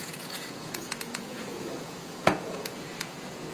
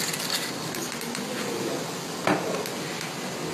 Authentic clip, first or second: second